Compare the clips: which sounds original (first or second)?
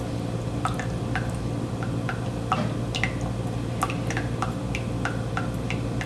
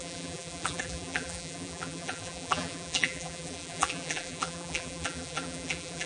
first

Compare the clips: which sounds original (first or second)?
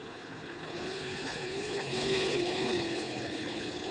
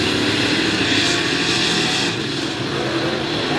second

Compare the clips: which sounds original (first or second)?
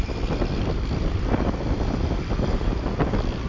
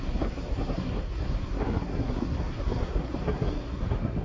first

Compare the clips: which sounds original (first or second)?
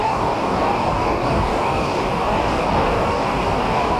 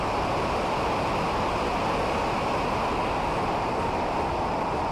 second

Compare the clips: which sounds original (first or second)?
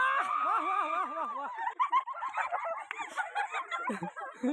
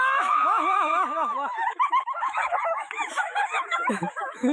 first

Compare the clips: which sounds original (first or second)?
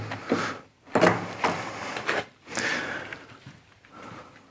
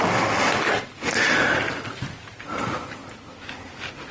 second